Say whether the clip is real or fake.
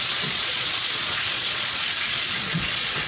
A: fake